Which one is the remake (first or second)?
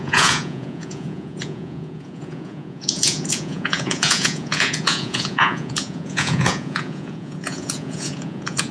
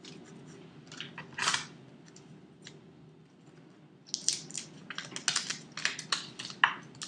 first